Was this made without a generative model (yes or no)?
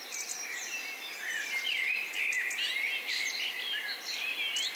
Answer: yes